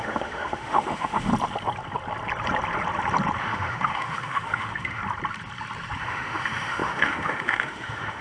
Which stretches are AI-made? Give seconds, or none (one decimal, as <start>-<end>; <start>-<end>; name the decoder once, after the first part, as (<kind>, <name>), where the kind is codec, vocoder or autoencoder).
0.0-1.3 (autoencoder, DAC-VAE); 3.4-5.0; 6.0-8.2

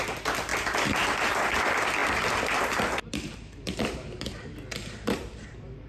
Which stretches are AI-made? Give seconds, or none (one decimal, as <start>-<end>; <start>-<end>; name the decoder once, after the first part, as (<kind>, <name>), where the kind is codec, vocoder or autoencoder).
0.5-1.3 (vocoder, BigVGAN v2); 2.0-5.5

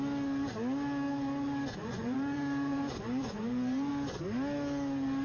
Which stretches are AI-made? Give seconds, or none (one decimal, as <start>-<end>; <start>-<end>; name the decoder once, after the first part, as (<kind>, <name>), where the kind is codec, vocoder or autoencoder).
1.8-3.9 (vocoder, Vocos)

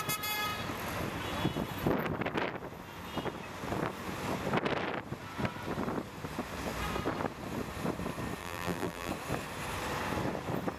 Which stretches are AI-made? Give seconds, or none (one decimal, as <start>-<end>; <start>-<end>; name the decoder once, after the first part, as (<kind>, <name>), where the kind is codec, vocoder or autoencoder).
8.4-9.1 (vocoder, BigVGAN v2)

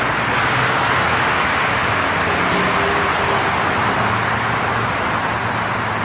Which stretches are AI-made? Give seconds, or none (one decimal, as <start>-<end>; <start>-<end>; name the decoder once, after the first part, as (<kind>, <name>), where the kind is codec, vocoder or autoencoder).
none

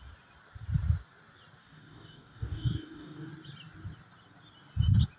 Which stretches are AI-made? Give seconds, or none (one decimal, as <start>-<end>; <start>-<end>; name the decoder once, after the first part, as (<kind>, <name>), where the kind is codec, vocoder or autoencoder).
1.6-3.3 (codec, DAC)

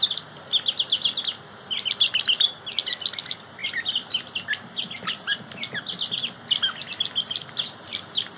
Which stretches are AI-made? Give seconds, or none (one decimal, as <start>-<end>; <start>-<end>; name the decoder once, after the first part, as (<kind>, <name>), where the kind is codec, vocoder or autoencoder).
none